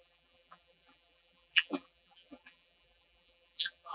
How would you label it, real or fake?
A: fake